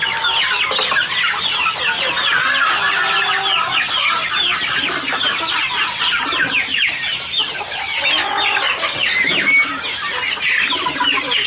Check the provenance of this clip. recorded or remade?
recorded